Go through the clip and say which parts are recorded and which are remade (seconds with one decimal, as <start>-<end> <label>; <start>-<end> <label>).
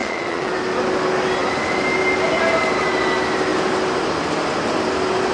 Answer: 0.0-0.5 remade; 0.5-5.3 recorded